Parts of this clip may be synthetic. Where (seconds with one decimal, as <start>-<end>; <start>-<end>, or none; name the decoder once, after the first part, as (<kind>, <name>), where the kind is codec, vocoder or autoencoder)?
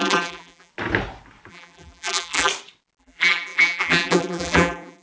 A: 0.0-0.7 (vocoder, BigVGAN v2); 1.5-2.5; 3.0-5.0